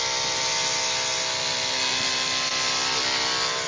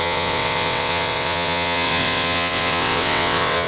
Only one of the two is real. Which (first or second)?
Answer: first